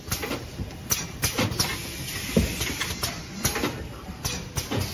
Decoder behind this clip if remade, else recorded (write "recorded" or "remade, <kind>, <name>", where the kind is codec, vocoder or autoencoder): recorded